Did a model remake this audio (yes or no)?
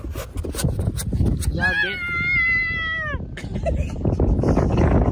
no